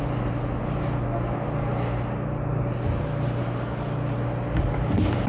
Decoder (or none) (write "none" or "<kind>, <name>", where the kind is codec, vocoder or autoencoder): none